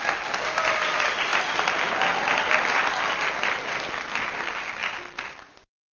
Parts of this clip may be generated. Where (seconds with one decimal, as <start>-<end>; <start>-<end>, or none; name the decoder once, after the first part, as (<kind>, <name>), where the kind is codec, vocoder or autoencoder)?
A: 4.8-5.9 (vocoder, BigVGAN v2)